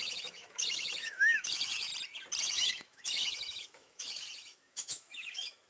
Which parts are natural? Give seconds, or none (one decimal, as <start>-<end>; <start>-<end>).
1.9-2.4